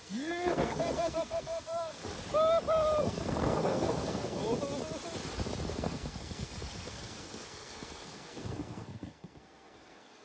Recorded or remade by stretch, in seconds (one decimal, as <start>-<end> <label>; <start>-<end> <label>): 0.0-2.0 remade; 2.0-3.0 recorded; 3.0-4.4 remade; 4.4-5.7 recorded; 5.7-10.2 remade